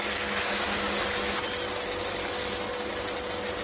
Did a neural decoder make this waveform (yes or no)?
no